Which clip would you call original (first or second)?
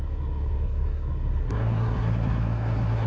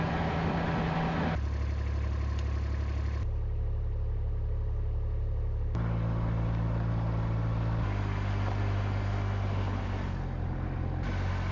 second